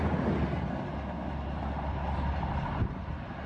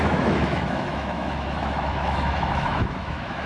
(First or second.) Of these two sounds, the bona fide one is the first